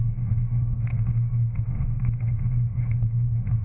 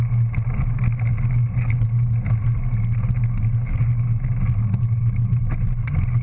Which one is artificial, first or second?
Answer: first